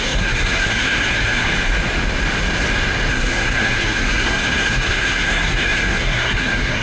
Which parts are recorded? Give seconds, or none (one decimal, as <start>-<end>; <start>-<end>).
1.5-3.1